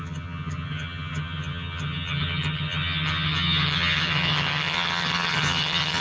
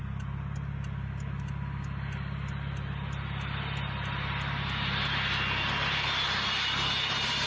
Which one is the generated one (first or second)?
first